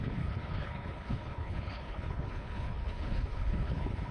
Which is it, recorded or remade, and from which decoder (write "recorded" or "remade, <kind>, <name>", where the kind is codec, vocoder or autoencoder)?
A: remade, codec, HILCodec